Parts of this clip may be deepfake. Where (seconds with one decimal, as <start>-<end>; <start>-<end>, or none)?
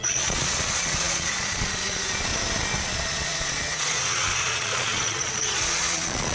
0.0-2.3; 2.8-6.3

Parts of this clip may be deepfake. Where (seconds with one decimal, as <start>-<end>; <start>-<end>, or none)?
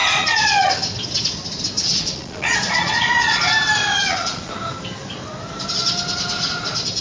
0.0-0.7; 1.8-3.4; 3.8-4.5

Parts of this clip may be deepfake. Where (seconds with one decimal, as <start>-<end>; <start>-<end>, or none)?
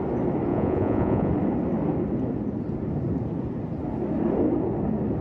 0.5-1.3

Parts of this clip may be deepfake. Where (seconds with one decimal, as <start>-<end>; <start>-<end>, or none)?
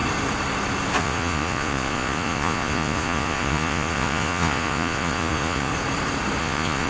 1.0-5.7; 6.4-6.9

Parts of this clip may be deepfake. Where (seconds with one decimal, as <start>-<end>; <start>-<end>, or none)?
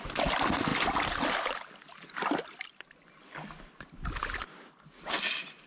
none